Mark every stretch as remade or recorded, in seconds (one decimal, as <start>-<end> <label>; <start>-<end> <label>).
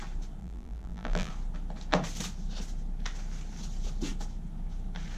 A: 0.0-0.4 recorded; 0.4-1.3 remade; 1.3-5.2 recorded